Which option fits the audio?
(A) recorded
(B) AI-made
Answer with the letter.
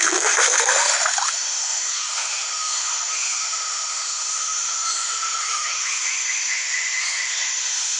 B